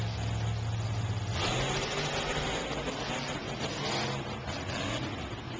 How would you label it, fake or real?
real